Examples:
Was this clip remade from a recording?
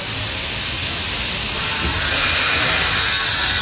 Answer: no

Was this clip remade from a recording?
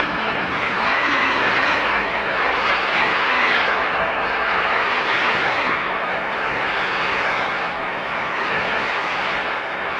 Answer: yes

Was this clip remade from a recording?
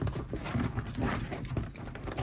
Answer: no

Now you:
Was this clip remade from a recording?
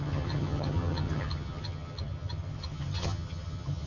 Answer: yes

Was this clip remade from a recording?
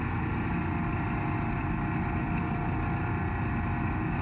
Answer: no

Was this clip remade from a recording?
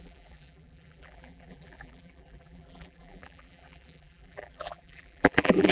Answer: yes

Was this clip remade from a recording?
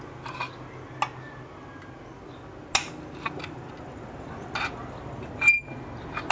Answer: no